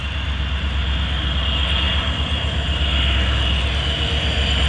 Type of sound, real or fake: real